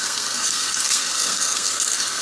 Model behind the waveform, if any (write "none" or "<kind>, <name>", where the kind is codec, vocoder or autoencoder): codec, SNAC